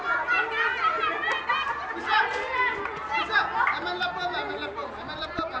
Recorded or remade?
recorded